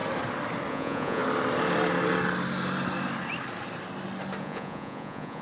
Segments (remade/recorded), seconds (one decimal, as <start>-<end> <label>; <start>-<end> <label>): 0.0-0.7 recorded; 0.7-1.2 remade; 1.2-4.4 recorded; 4.4-5.4 remade